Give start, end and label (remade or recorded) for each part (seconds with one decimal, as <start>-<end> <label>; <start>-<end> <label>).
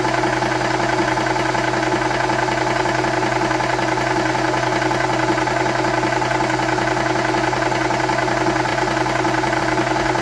0.0-10.2 recorded